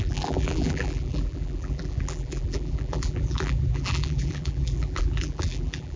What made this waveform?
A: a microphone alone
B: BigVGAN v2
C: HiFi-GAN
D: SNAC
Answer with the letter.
B